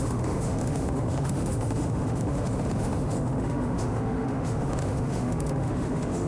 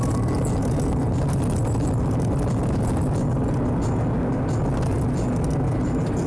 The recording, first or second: second